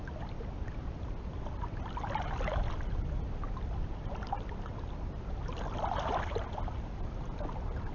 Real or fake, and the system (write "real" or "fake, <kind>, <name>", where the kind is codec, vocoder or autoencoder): real